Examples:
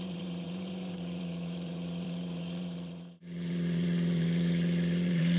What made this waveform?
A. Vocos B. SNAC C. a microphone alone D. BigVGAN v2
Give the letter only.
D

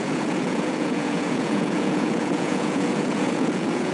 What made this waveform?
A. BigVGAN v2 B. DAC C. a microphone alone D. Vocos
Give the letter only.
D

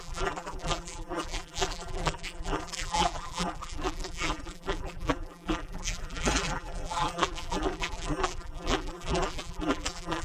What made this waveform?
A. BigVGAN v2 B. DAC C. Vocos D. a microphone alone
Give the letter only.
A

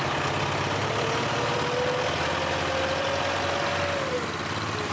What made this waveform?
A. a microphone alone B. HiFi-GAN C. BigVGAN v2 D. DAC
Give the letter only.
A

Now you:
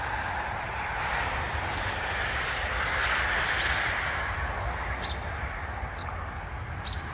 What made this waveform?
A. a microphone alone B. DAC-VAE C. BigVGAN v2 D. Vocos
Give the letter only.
A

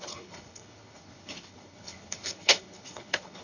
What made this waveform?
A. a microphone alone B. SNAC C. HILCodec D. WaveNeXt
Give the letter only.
C